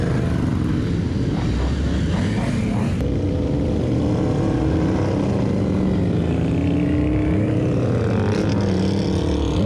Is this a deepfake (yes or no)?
no